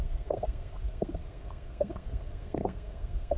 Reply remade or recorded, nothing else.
remade